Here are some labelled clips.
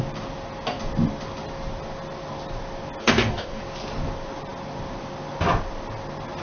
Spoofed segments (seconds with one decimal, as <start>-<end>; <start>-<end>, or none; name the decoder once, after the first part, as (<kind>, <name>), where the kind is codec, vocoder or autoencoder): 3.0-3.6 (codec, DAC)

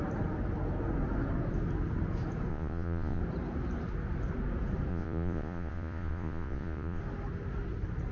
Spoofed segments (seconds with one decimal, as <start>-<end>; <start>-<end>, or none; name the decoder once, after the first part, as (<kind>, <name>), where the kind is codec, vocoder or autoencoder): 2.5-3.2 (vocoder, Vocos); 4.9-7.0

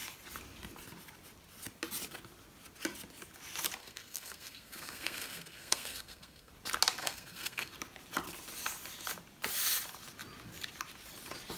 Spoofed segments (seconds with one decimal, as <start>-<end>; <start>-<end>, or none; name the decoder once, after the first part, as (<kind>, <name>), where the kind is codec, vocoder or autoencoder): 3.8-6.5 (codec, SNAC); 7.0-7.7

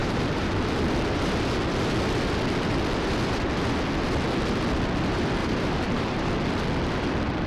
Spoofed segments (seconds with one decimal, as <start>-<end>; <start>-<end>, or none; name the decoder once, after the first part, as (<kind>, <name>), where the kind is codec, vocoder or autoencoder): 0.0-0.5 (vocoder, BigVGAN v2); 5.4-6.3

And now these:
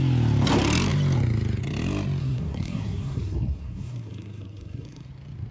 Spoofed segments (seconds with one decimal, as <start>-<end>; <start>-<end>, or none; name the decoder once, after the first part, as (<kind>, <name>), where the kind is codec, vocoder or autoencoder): 2.2-5.1 (codec, SNAC)

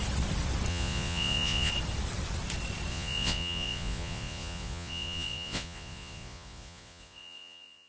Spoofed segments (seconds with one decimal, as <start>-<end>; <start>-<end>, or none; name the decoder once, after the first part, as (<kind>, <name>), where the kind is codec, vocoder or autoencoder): 0.7-1.7 (vocoder, Vocos); 2.9-7.9